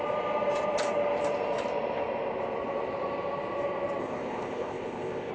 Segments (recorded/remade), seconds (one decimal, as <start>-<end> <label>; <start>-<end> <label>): 0.0-4.0 recorded; 4.0-5.3 remade